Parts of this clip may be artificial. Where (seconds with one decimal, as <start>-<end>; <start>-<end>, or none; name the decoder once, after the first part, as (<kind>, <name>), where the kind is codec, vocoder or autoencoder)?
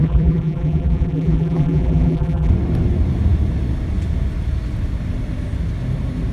0.0-2.5 (vocoder, BigVGAN v2)